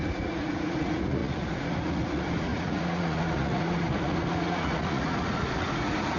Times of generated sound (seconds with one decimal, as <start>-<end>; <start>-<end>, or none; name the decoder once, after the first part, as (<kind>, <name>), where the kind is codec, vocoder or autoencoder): 0.0-6.2 (vocoder, Vocos)